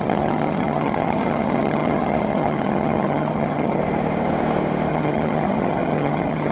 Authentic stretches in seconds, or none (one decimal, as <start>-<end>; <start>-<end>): 3.8-4.9

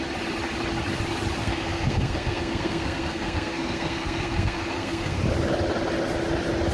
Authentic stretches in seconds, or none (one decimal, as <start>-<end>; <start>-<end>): 0.0-1.4; 5.2-6.7

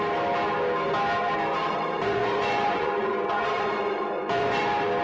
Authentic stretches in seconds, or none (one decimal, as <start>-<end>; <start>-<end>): 0.0-1.6; 4.6-5.0

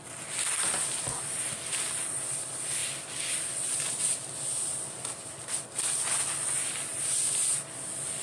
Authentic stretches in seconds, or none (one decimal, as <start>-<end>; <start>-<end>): 0.0-8.2

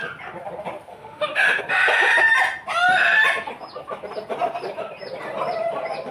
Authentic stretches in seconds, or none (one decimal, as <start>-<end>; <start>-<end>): 0.0-0.9; 1.6-6.1

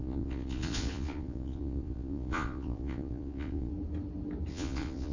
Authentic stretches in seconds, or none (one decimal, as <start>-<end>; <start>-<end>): 3.7-4.5

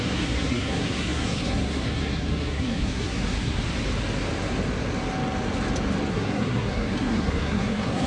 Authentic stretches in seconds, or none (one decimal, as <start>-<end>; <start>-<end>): 3.6-6.1

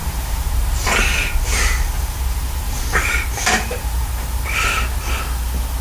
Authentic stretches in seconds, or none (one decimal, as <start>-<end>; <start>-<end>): 1.0-2.0; 4.8-5.8